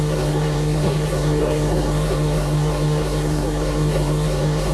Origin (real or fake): fake